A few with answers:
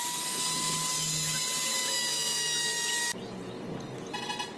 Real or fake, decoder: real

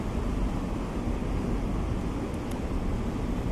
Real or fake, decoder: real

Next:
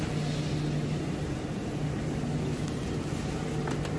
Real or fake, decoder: real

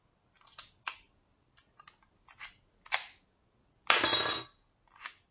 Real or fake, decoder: real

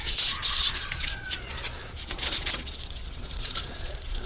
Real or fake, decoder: fake, vocoder, Vocos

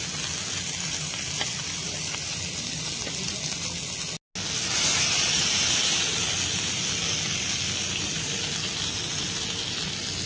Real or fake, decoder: real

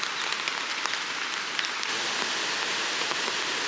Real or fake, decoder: real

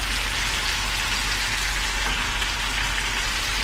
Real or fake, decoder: real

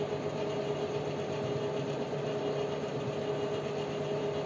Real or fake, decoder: real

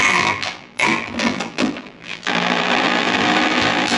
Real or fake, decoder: fake, vocoder, BigVGAN v2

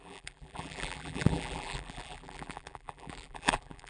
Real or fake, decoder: fake, vocoder, BigVGAN v2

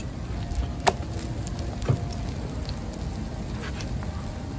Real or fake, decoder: real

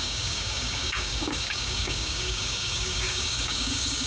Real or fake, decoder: fake, codec, DAC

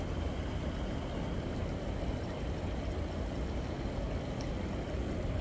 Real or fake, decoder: real